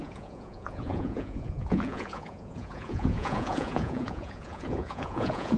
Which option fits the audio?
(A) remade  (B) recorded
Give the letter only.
A